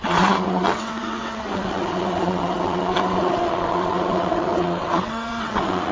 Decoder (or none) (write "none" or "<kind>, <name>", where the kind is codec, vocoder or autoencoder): vocoder, WaveNeXt